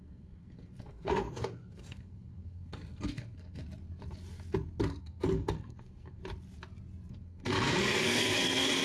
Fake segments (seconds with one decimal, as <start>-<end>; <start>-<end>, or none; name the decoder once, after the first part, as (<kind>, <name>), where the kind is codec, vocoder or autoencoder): 0.0-3.6 (codec, SNAC); 5.0-6.2; 7.1-8.8